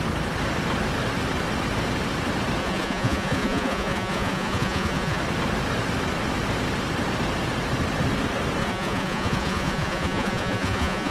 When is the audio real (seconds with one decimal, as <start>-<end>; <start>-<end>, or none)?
0.0-2.6; 5.2-8.6